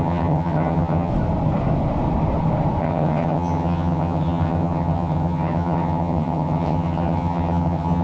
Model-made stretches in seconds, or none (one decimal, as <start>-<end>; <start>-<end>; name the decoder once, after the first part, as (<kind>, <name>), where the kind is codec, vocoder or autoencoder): 0.0-1.1 (vocoder, HiFi-GAN); 2.8-8.0